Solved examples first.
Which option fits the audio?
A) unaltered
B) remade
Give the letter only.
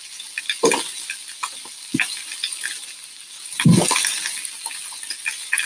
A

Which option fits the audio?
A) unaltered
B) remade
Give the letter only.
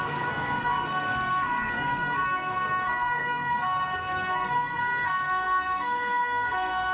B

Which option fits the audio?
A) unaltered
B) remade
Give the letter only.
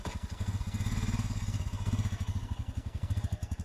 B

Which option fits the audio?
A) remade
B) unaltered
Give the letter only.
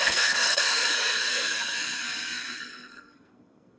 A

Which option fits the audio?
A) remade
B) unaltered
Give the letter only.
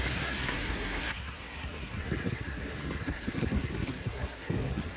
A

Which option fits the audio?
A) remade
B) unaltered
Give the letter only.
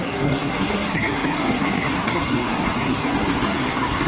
A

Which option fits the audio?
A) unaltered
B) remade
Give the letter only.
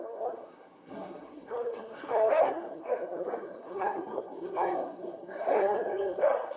B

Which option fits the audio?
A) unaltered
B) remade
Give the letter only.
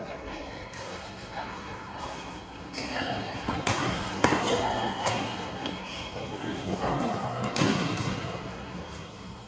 B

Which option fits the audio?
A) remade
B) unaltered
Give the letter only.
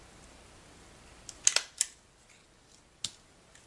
B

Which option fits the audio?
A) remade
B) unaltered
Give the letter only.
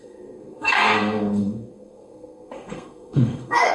A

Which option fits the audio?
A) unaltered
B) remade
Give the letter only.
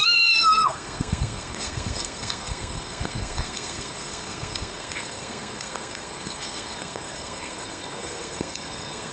B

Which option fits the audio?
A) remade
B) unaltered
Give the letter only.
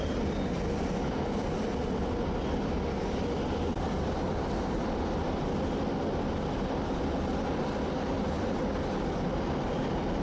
B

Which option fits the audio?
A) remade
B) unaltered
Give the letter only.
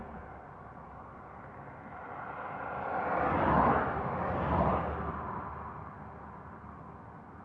B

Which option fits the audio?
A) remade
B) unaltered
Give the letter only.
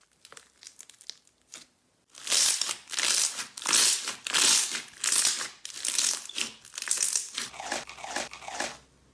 B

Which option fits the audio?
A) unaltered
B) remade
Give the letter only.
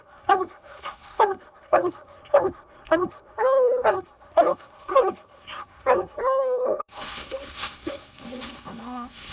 B